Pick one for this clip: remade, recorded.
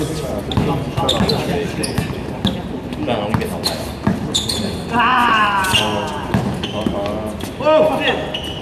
recorded